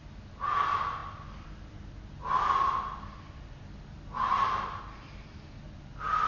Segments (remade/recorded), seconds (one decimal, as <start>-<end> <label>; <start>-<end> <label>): 0.0-6.3 recorded